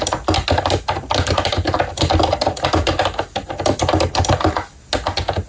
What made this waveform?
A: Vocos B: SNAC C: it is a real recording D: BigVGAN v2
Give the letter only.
C